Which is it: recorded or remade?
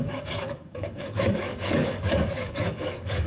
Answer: remade